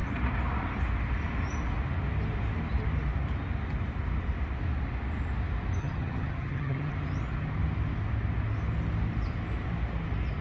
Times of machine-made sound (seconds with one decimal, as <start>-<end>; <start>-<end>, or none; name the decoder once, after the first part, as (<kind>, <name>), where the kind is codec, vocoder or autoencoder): 5.8-6.9 (vocoder, HiFi-GAN)